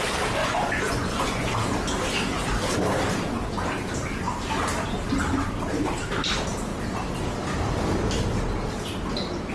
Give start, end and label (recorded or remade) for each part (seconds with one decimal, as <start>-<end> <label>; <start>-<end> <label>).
0.0-0.4 recorded; 0.4-1.5 remade; 1.5-9.5 recorded